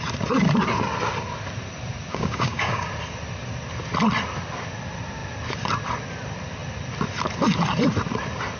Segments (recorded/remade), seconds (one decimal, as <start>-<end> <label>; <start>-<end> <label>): 0.0-2.1 recorded; 2.1-2.9 remade; 2.9-8.6 recorded